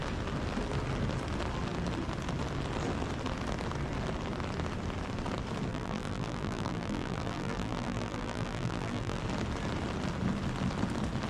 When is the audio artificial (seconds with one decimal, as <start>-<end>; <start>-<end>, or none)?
5.7-9.2